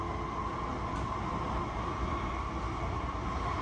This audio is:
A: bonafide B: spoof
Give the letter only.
A